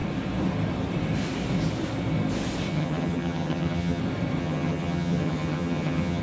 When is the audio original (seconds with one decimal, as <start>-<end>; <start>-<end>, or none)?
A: 0.0-2.7; 4.0-4.4